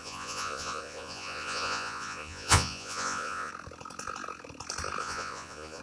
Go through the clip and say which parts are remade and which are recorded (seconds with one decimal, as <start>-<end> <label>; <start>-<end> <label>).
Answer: 0.0-3.5 remade; 3.5-5.0 recorded; 5.0-5.8 remade